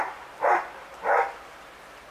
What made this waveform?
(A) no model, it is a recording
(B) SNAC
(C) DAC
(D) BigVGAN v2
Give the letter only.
D